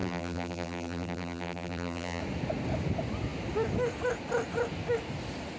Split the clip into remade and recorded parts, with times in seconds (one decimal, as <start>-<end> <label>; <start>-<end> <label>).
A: 0.0-2.2 remade; 2.2-5.6 recorded